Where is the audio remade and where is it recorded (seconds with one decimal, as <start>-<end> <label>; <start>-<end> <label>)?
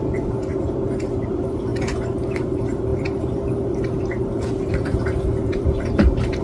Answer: 0.0-1.7 remade; 1.7-2.3 recorded; 2.3-6.4 remade